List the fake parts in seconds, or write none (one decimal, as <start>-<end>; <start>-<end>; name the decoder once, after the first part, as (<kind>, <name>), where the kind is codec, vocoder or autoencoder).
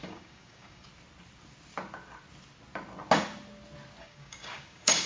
0.0-0.9 (codec, DAC); 4.0-5.1